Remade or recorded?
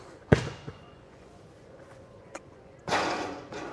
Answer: remade